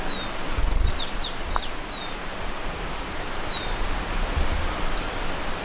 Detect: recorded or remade recorded